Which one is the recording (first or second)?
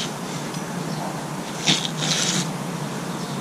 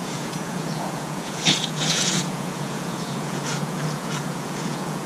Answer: first